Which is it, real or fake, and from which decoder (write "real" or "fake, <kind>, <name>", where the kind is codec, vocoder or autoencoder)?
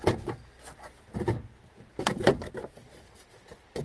real